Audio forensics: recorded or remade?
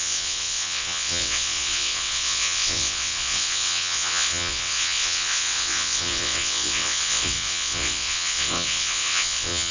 remade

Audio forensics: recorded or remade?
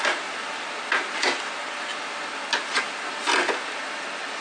recorded